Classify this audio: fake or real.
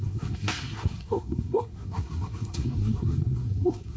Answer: fake